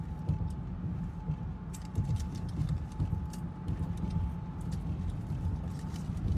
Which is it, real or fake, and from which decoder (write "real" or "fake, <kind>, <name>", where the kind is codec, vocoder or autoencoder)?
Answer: real